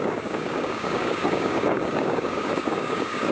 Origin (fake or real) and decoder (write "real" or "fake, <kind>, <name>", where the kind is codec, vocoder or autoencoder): fake, codec, DAC